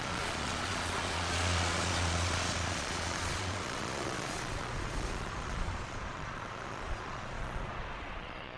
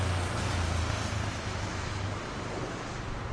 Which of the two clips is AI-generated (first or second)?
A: first